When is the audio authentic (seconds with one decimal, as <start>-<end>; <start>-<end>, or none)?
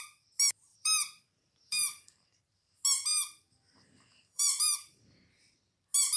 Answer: 0.0-0.7; 2.7-3.1; 5.6-6.2